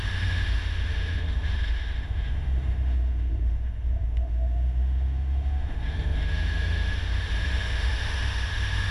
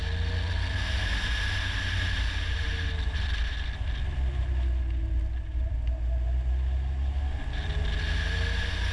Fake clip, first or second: first